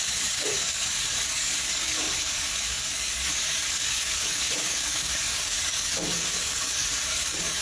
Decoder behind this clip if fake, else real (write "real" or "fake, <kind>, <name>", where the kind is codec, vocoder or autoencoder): fake, codec, DAC